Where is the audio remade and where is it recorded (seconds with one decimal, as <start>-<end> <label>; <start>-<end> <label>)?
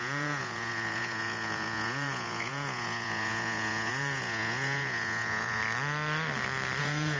0.0-5.6 remade; 5.6-6.8 recorded; 6.8-7.2 remade